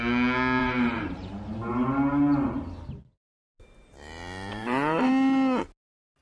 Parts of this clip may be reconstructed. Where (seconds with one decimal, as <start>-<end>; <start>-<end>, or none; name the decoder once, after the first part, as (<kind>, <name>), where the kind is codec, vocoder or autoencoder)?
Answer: 0.6-1.7 (vocoder, BigVGAN v2); 4.5-5.1